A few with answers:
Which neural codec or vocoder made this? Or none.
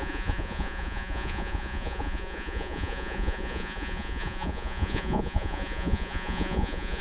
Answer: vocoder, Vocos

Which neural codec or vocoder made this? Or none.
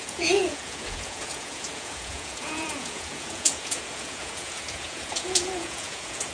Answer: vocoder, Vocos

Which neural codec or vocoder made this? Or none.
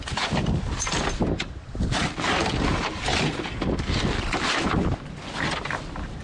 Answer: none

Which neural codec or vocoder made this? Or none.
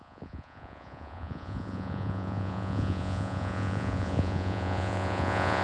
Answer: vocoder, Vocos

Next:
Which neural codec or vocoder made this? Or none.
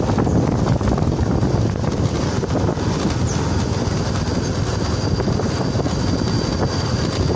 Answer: none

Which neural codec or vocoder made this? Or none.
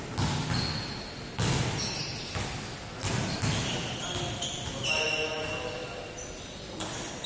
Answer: none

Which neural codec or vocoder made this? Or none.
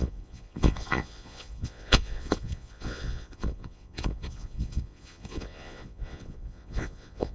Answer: vocoder, Vocos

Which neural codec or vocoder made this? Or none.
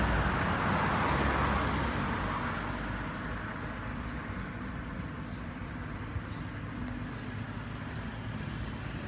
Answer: none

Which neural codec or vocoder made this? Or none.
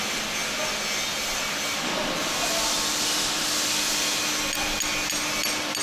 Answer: none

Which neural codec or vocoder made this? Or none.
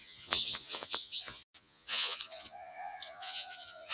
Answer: vocoder, Vocos